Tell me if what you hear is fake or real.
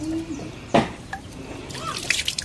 fake